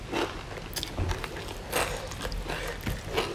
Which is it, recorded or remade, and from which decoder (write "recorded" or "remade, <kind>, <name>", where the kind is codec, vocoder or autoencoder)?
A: recorded